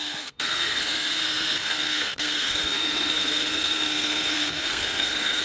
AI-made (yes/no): yes